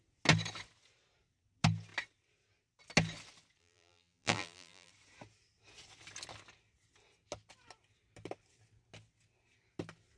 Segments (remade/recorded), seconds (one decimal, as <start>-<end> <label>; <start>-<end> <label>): 0.0-3.6 recorded; 3.6-4.9 remade; 4.9-10.2 recorded